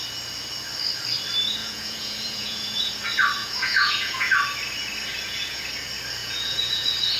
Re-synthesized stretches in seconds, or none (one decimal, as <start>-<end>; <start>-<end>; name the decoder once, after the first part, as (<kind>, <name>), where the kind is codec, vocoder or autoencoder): 1.6-2.9 (vocoder, Vocos); 3.4-4.3; 5.1-5.6; 6.2-7.2